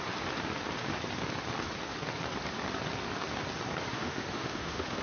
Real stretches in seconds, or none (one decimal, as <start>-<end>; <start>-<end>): 0.0-3.9